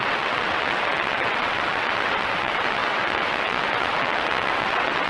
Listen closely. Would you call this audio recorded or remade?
remade